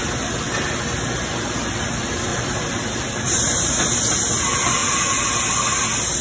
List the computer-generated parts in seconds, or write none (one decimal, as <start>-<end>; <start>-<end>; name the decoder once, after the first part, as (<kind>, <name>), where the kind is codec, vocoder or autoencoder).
2.3-3.4 (vocoder, BigVGAN v2)